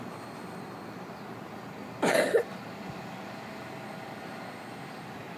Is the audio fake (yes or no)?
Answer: no